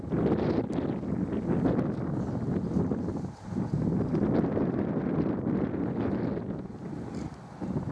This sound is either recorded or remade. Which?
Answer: recorded